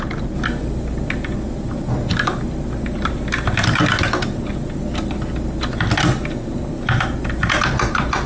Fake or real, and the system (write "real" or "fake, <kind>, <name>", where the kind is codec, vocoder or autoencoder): real